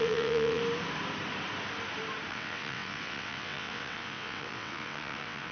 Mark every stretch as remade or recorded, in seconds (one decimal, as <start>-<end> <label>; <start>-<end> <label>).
0.0-0.6 remade; 0.6-2.3 recorded; 2.3-5.5 remade